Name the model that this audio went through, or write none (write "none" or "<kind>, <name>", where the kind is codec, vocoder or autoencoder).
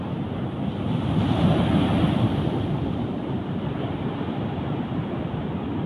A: none